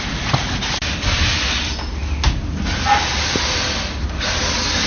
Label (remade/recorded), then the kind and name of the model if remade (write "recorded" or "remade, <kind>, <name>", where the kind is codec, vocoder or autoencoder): recorded